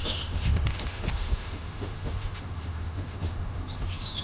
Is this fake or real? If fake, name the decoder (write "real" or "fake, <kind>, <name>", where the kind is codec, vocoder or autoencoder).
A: fake, autoencoder, DAC-VAE